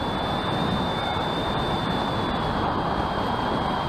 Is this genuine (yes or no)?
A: yes